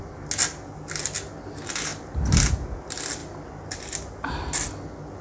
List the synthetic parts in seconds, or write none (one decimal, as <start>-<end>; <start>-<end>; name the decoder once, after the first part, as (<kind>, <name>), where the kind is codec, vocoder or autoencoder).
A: none